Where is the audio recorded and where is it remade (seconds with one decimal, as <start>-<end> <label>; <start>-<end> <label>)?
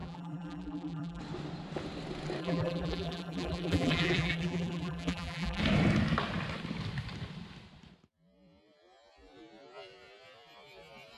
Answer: 0.0-1.2 remade; 1.2-2.4 recorded; 2.4-5.6 remade; 5.6-11.2 recorded